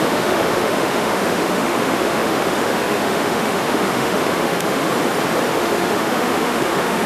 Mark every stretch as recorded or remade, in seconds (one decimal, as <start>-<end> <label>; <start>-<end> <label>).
0.0-4.9 remade; 4.9-5.5 recorded; 5.5-7.1 remade